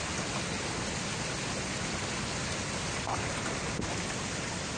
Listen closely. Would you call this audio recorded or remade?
recorded